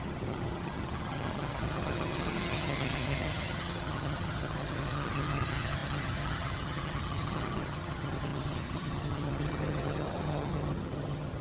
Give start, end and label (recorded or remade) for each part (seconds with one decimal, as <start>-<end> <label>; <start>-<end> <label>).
0.0-11.4 remade